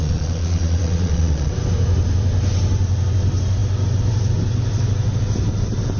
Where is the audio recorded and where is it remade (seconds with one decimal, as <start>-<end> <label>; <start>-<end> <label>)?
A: 0.0-1.5 remade; 1.5-6.0 recorded